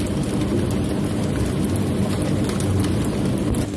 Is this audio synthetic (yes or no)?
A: no